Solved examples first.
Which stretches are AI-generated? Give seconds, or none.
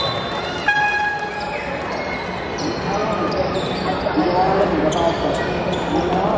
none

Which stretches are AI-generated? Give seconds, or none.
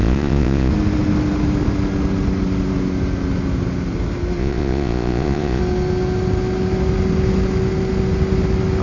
0.0-0.7 (vocoder, Vocos); 4.4-5.6